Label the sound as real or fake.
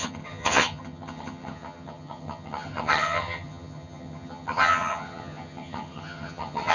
fake